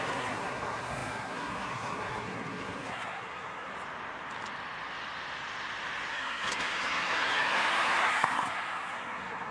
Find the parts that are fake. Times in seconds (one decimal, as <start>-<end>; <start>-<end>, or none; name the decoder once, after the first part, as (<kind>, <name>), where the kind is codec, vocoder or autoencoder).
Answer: 0.0-3.7 (codec, SNAC); 6.1-9.5